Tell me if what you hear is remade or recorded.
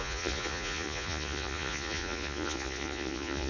remade